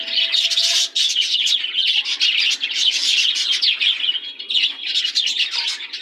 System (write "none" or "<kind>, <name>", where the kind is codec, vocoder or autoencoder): none